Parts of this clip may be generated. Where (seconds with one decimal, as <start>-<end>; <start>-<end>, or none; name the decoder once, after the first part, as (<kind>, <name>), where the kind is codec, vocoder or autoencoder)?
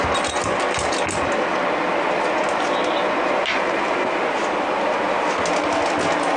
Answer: 3.4-4.3 (vocoder, BigVGAN v2)